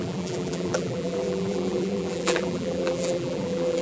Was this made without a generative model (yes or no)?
no